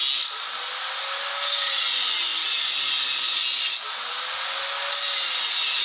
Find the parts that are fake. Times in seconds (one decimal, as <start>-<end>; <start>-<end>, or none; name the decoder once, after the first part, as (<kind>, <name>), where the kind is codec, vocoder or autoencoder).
1.3-1.8 (codec, DAC)